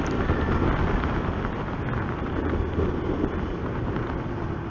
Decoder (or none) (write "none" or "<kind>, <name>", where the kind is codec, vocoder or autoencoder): none